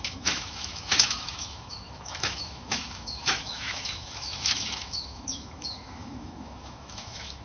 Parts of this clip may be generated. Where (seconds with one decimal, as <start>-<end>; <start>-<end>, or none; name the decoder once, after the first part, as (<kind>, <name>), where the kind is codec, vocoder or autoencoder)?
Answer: 0.0-7.4 (autoencoder, DAC-VAE)